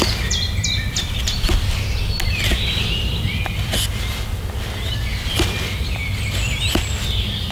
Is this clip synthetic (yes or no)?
no